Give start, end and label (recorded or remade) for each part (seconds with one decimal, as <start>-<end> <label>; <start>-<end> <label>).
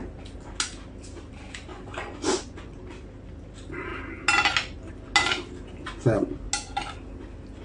0.0-1.7 recorded; 1.7-2.8 remade; 2.8-7.6 recorded